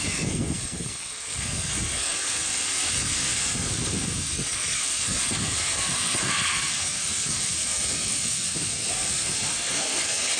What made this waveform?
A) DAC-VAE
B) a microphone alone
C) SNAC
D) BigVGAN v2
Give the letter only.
C